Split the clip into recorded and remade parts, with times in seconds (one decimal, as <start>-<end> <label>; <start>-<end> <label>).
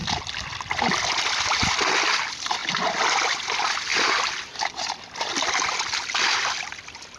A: 0.0-7.2 recorded